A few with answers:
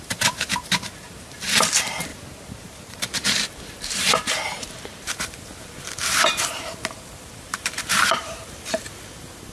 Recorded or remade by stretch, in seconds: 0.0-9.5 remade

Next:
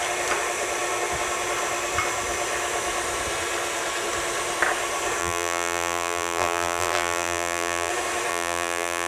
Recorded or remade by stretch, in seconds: 0.0-5.2 recorded; 5.2-7.9 remade; 7.9-8.3 recorded; 8.3-9.1 remade

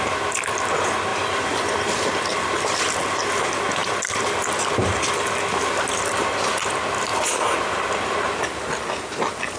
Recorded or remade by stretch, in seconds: 0.0-1.1 recorded; 1.1-3.3 remade; 3.3-9.6 recorded